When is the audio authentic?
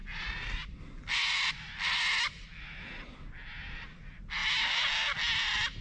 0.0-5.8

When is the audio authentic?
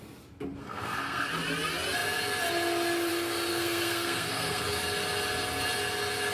0.0-0.6; 1.3-3.5; 4.6-6.3